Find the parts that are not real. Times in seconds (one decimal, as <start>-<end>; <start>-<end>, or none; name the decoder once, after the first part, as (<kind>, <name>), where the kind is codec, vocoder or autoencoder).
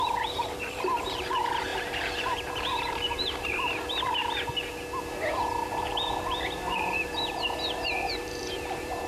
0.0-4.2 (vocoder, BigVGAN v2); 5.0-9.1